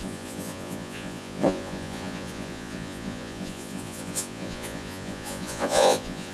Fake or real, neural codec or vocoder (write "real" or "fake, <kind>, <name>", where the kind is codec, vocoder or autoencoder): fake, vocoder, Vocos